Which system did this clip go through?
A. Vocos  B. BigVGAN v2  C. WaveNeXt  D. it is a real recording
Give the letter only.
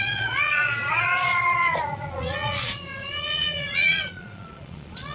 A